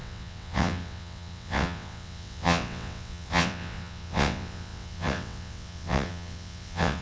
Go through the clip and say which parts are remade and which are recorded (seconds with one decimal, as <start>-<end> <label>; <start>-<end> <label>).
0.0-7.0 remade